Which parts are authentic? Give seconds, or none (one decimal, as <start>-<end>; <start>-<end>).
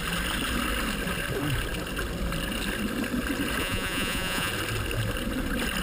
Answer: 0.0-3.6; 4.5-5.8